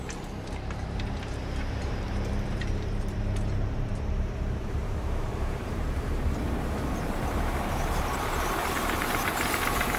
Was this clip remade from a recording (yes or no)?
yes